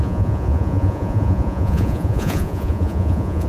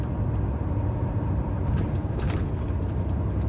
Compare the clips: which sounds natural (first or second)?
second